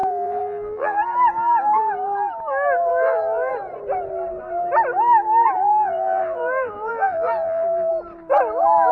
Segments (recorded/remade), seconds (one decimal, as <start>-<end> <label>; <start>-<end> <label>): 0.0-1.0 remade; 1.0-2.9 recorded; 2.9-3.5 remade; 3.5-5.7 recorded; 5.7-7.9 remade; 7.9-8.9 recorded